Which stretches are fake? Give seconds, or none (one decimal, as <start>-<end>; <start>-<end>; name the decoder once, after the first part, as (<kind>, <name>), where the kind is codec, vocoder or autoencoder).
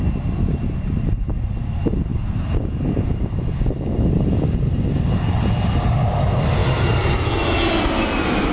none